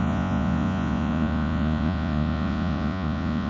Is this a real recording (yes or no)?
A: no